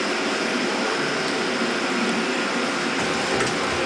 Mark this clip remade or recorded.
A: recorded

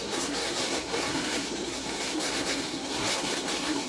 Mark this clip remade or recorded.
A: remade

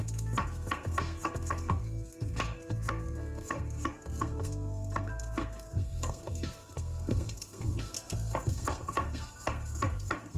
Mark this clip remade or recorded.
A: remade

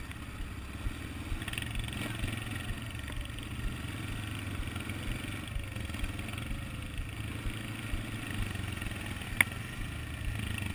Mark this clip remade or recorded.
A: recorded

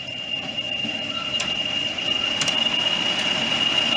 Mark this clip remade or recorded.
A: recorded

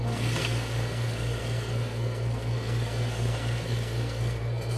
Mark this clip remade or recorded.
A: remade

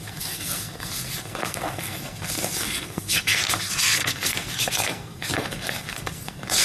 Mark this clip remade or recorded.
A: remade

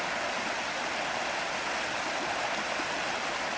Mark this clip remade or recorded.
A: recorded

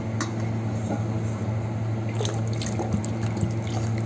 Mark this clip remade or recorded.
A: recorded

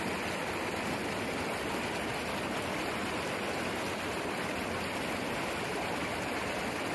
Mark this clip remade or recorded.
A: recorded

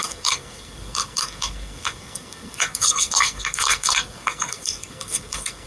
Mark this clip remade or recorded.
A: remade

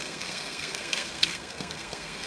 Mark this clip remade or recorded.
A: remade